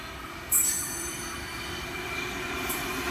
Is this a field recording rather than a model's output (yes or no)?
no